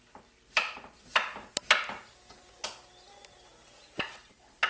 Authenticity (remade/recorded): recorded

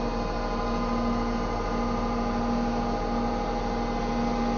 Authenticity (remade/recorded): recorded